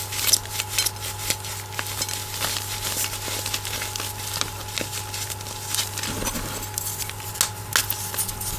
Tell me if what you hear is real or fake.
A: real